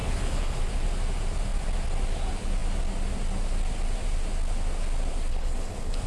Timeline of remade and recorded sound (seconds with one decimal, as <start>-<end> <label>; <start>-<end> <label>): 0.0-0.6 remade; 0.6-5.3 recorded; 5.3-6.1 remade